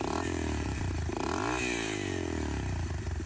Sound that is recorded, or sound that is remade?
remade